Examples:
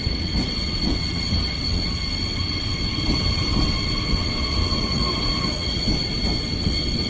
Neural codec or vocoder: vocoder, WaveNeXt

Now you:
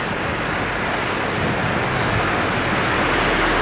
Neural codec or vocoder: none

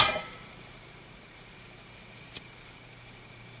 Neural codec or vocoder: vocoder, BigVGAN v2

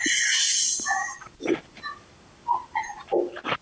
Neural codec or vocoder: none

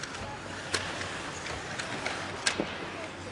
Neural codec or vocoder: none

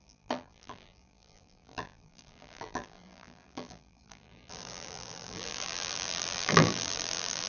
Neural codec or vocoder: vocoder, BigVGAN v2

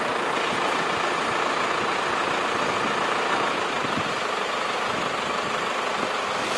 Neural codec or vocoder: none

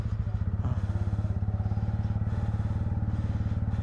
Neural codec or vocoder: none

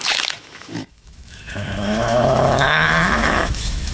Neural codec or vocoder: autoencoder, DAC-VAE